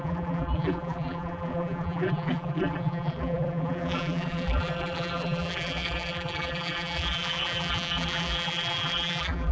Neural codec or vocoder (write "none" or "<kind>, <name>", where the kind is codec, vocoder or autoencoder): vocoder, BigVGAN v2